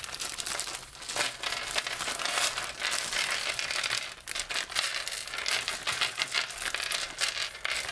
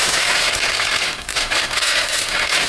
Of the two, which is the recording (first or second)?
first